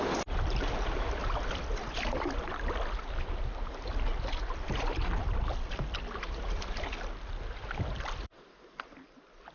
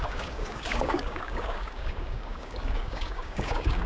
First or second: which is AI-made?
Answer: second